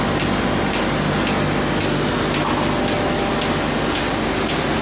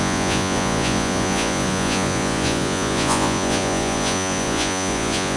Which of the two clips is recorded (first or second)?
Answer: first